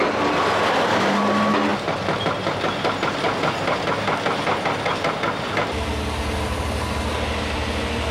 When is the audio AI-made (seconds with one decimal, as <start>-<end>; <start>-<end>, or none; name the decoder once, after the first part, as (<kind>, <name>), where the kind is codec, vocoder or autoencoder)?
none